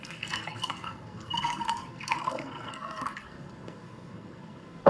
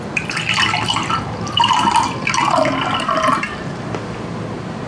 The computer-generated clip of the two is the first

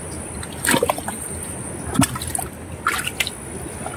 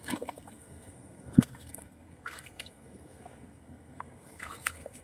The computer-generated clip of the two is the second